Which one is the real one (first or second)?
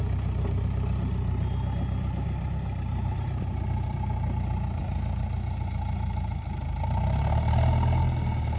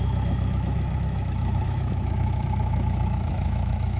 first